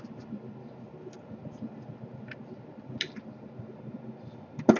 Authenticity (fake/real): real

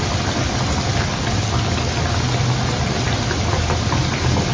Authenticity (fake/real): real